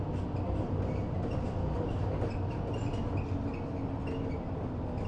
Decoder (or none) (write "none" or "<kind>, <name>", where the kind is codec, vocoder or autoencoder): none